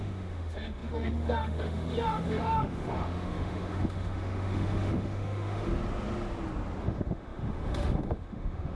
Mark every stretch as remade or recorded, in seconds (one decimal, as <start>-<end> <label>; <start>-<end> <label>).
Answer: 0.0-5.7 remade; 5.7-6.8 recorded; 6.8-8.8 remade